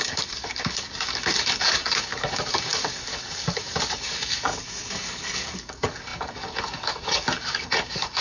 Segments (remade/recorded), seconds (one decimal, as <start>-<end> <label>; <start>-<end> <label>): 0.0-8.2 remade